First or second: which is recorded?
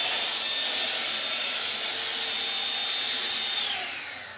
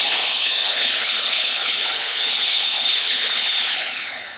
first